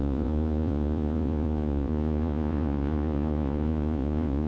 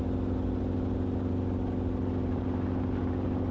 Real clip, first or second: second